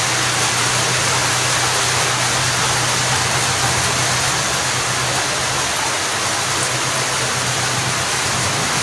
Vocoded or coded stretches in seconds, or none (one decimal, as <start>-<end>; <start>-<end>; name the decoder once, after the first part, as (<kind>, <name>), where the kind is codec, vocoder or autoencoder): none